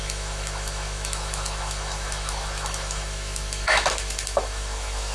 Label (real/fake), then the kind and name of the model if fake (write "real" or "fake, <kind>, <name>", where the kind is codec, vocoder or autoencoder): fake, autoencoder, DAC-VAE